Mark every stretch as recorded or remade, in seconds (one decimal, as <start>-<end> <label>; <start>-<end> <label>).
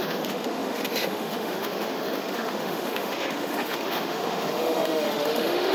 0.0-5.7 remade